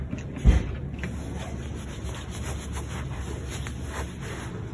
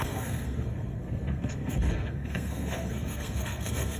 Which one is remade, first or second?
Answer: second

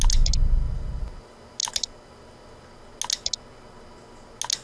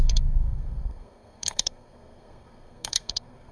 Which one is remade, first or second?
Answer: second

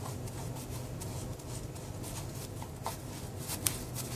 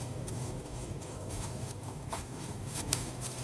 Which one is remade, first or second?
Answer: second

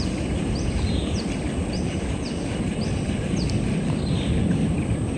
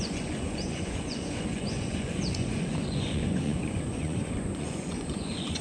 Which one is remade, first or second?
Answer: second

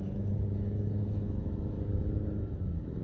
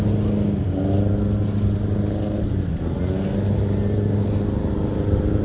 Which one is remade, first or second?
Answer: first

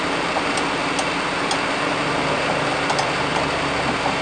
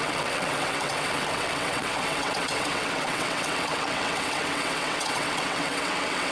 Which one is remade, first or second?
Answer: second